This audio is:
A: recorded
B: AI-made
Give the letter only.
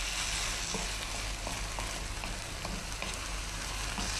A